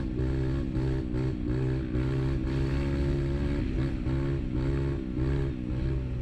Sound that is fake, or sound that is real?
real